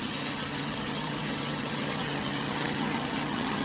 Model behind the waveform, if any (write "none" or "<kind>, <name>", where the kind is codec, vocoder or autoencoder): vocoder, HiFi-GAN